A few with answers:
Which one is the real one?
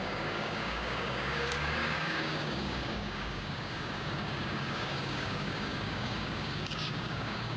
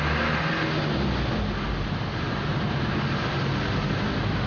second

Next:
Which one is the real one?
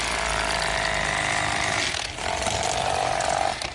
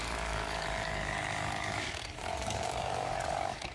first